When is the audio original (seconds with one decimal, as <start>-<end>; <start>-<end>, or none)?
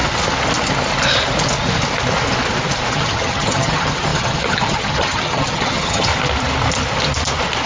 0.0-2.9; 6.1-7.7